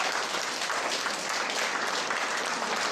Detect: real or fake real